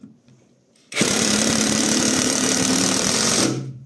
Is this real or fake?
fake